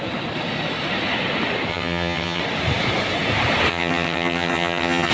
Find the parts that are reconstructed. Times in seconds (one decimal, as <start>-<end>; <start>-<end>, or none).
1.7-2.4; 3.7-5.1

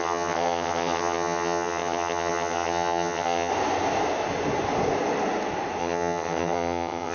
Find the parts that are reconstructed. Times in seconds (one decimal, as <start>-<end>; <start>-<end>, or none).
0.0-3.5; 5.8-7.1